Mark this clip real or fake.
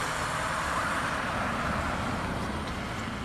real